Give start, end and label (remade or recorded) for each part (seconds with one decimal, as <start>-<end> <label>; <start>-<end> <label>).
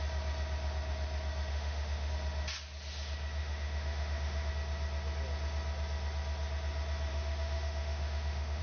0.0-1.5 recorded; 1.5-2.1 remade; 2.1-3.4 recorded; 3.4-4.5 remade; 4.5-7.1 recorded; 7.1-8.6 remade